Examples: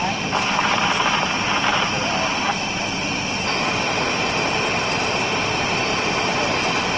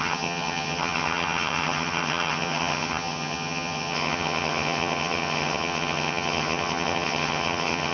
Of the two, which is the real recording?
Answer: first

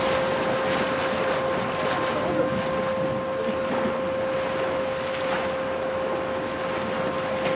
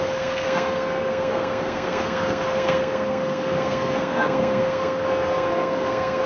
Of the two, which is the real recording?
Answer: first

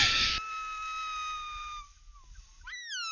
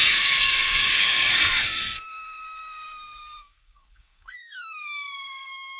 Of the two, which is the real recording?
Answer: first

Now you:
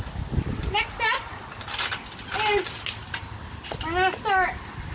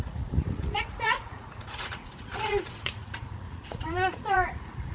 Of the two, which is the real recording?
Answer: first